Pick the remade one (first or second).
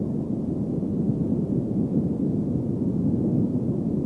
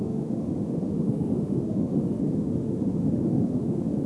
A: second